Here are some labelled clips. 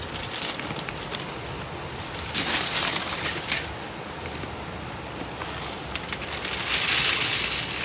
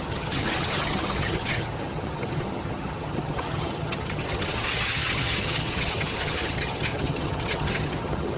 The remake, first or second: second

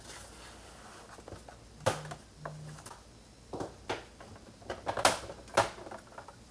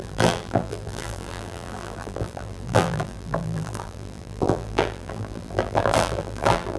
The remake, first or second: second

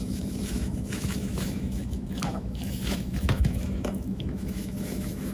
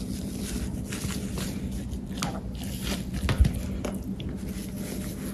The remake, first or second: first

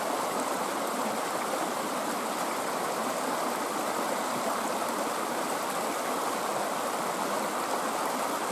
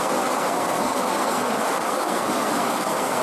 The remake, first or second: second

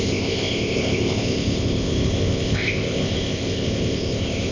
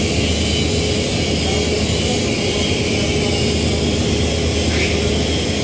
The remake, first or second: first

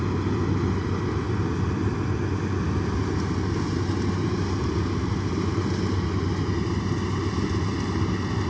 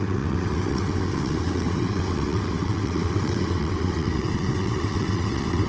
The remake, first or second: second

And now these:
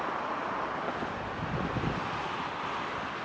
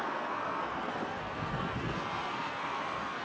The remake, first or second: second